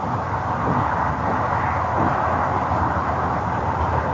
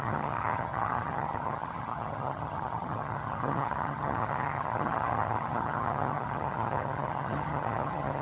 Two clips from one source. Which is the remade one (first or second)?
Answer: second